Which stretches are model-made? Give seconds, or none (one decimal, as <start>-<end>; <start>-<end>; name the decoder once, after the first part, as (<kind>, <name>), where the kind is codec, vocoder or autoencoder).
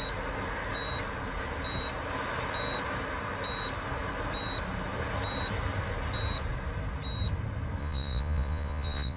7.8-9.2 (vocoder, Vocos)